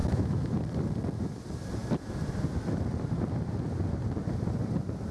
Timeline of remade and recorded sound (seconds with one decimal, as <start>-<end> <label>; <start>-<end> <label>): 0.0-0.6 remade; 0.6-5.1 recorded